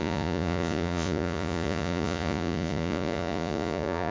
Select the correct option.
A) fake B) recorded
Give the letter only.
A